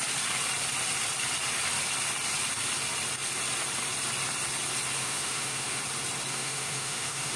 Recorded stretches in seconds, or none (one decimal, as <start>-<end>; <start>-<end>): 0.0-5.0; 5.8-6.3